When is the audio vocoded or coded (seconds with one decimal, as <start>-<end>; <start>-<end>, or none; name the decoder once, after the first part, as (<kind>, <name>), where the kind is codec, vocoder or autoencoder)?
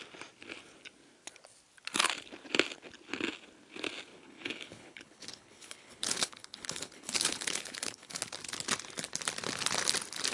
4.1-8.2 (codec, HILCodec)